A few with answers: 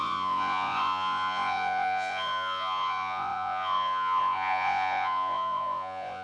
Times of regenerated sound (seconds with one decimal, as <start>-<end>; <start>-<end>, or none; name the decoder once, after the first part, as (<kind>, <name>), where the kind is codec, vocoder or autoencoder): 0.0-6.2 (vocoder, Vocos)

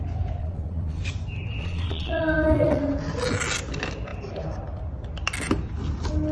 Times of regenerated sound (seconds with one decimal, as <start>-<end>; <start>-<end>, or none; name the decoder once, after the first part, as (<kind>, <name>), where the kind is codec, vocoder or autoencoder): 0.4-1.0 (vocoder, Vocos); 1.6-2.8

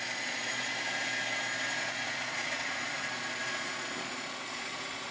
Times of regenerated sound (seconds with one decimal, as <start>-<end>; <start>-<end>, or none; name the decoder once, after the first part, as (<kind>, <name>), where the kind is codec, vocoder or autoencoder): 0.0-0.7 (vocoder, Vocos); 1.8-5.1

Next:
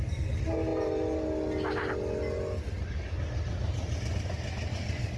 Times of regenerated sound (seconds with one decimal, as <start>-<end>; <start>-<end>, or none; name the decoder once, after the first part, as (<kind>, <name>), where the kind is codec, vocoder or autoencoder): none